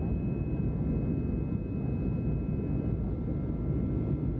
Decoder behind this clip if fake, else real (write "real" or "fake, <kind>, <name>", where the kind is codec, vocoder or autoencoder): real